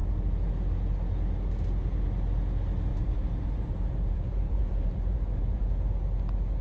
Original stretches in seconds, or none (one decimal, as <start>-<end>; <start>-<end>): 0.0-2.9; 5.9-6.6